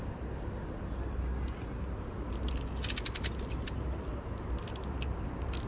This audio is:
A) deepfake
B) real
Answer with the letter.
B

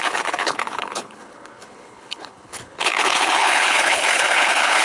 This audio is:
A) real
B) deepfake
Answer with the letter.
B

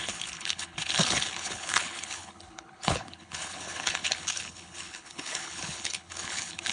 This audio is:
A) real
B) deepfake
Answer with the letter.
B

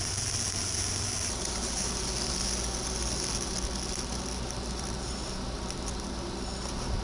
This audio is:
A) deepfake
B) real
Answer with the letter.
B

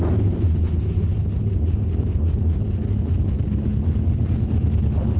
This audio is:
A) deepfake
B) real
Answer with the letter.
B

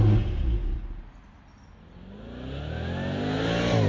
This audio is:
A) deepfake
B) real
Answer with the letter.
B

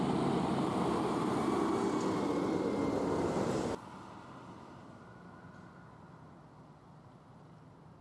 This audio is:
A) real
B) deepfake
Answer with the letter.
A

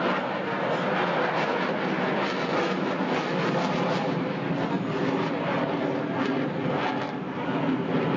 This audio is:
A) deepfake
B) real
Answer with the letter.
B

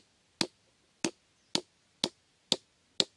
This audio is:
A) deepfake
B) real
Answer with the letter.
B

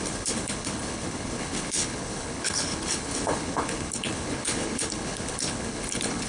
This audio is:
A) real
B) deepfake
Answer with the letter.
B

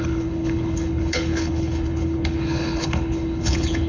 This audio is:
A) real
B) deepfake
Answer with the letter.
B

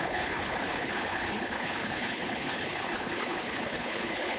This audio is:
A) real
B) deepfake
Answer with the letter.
B